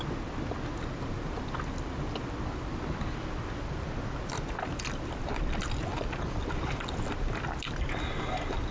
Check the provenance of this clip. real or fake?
real